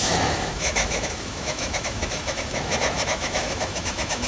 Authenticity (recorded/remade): remade